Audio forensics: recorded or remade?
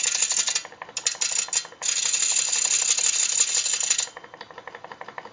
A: recorded